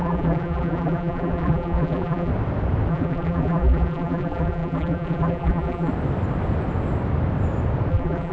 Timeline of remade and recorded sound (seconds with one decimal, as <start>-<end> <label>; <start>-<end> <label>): 0.0-2.3 remade; 2.3-2.9 recorded; 2.9-5.9 remade; 5.9-7.9 recorded; 7.9-8.3 remade